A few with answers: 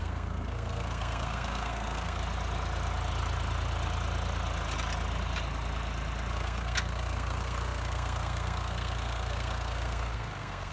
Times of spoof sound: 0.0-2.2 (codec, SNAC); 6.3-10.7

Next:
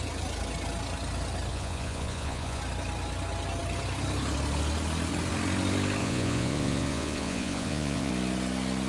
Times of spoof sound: 1.5-2.6 (vocoder, Vocos); 6.0-8.1

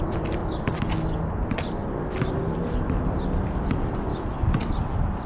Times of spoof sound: 0.0-0.4 (vocoder, BigVGAN v2); 3.6-4.1

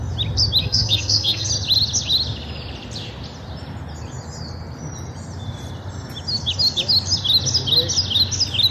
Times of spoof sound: 0.6-1.5 (codec, SNAC)

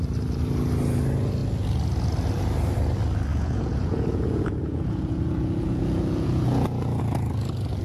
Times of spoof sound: 3.3-7.0 (vocoder, Vocos)

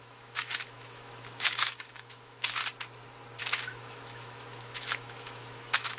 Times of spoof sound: 0.0-2.6 (autoencoder, DAC-VAE); 3.4-6.0

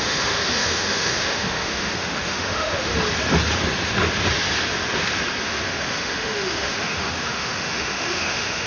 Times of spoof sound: 0.0-2.9 (autoencoder, DAC-VAE); 5.4-8.7